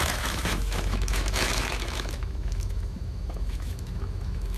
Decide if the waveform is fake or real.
fake